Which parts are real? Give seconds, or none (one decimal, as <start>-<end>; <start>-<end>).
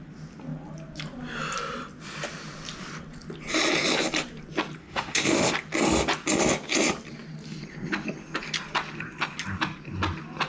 0.0-4.8; 5.5-10.5